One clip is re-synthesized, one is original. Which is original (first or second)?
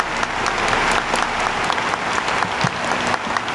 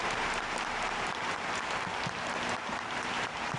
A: first